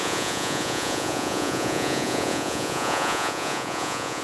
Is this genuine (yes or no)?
no